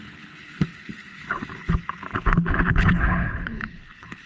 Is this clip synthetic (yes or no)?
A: yes